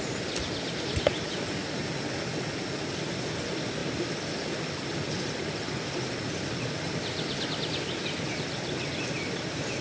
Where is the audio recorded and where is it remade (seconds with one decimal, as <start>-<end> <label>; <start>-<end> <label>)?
0.0-3.8 recorded; 3.8-8.3 remade; 8.3-9.8 recorded